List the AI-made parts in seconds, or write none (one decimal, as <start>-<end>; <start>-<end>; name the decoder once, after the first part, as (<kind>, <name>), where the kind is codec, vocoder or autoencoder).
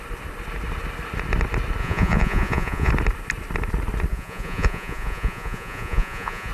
1.8-2.9 (vocoder, Vocos); 4.1-6.5